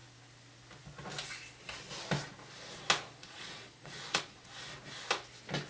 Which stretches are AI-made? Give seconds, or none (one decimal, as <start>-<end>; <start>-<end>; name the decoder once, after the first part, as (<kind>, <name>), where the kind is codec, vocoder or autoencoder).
3.2-4.5 (vocoder, Vocos)